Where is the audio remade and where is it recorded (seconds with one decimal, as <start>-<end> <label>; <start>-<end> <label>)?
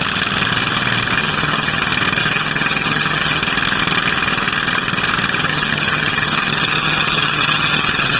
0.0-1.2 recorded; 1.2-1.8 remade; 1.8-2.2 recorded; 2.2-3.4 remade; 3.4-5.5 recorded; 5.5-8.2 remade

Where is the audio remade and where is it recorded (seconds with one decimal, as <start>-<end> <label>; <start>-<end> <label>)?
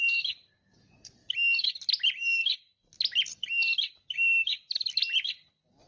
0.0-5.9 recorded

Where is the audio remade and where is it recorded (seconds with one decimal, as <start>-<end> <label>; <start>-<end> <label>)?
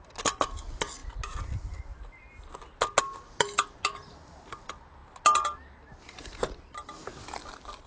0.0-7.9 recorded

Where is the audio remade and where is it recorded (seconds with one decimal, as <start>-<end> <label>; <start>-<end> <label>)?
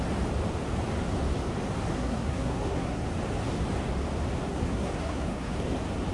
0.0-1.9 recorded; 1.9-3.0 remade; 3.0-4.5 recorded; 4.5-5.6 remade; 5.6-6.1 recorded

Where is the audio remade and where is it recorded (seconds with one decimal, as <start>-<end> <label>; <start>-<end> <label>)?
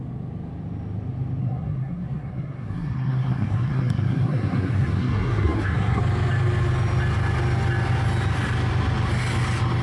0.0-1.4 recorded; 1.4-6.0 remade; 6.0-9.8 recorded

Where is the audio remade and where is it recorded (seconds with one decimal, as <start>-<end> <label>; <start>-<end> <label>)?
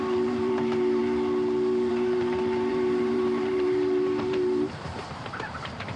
0.0-1.0 remade; 1.0-1.9 recorded; 1.9-6.0 remade